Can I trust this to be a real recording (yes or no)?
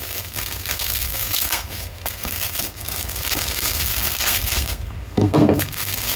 no